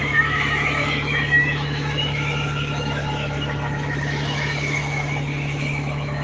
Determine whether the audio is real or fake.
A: fake